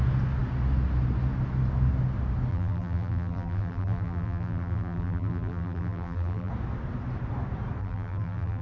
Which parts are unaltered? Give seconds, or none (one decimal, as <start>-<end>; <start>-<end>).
0.0-2.5; 6.5-7.8